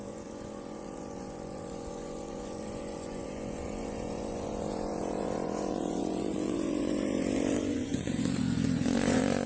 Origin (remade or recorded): remade